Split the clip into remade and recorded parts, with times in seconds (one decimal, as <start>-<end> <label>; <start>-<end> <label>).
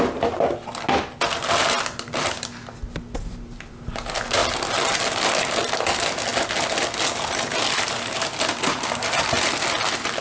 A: 0.0-10.2 recorded